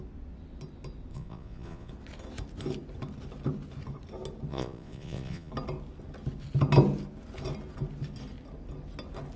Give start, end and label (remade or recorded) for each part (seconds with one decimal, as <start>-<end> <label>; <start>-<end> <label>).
0.0-1.1 recorded; 1.1-1.9 remade; 1.9-4.5 recorded; 4.5-5.5 remade; 5.5-9.4 recorded